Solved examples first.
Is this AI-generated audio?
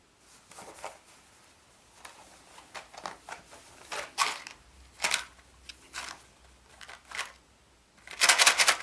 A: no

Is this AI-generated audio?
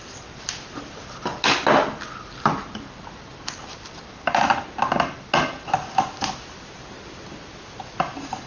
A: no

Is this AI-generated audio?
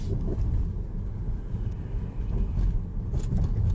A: yes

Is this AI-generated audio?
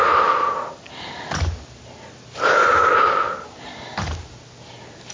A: no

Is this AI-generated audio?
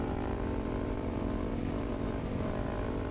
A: yes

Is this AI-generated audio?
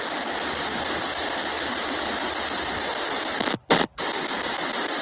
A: no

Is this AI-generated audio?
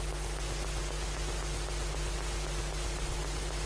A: no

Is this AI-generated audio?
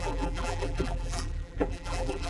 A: yes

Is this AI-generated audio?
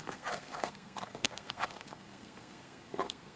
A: yes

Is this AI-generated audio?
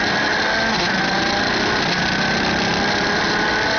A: no